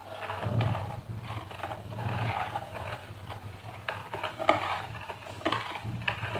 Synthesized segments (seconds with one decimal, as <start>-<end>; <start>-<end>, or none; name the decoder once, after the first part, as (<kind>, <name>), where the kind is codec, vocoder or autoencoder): 1.8-3.0 (vocoder, Vocos); 3.5-4.0